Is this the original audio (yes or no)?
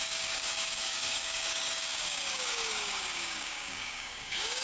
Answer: no